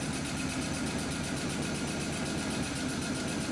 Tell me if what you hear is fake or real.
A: real